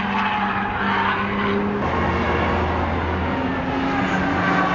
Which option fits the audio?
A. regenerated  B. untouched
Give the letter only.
B